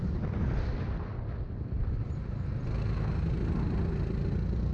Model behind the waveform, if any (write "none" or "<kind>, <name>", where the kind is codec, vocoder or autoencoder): none